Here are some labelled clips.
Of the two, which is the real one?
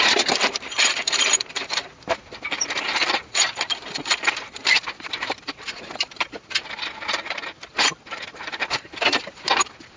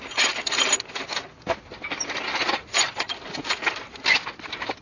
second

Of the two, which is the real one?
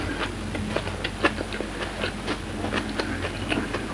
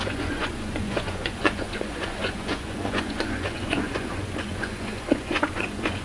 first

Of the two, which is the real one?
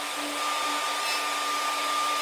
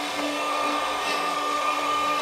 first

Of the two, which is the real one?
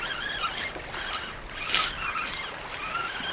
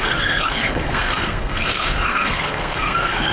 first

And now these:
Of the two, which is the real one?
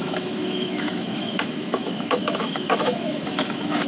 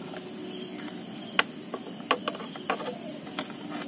second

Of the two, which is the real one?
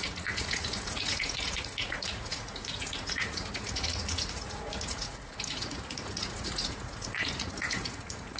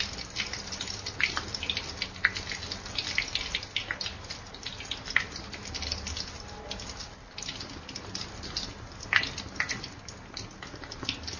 second